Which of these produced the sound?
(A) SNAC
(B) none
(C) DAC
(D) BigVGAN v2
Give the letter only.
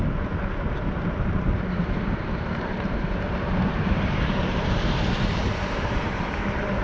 D